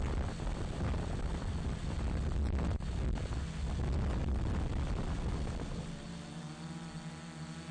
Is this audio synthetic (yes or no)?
no